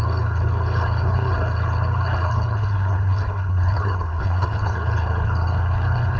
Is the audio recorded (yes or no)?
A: no